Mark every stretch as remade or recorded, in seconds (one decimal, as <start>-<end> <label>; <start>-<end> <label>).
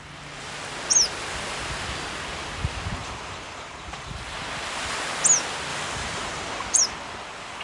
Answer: 0.0-3.0 recorded; 3.0-4.1 remade; 4.1-5.7 recorded; 5.7-6.8 remade; 6.8-7.6 recorded